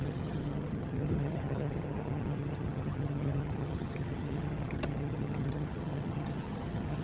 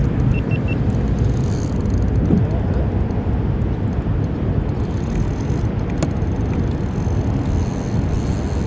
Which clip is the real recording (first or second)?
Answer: second